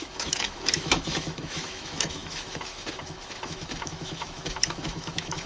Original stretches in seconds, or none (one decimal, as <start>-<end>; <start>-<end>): none